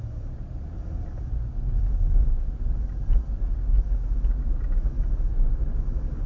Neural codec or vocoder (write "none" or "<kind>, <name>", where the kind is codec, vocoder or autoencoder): none